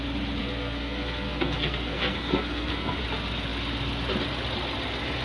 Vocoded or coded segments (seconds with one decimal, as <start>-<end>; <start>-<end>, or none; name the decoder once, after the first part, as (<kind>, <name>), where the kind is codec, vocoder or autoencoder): 0.4-3.0 (codec, SNAC)